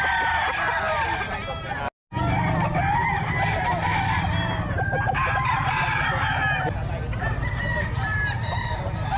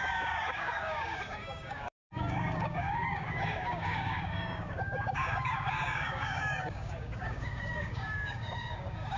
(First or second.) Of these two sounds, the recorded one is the first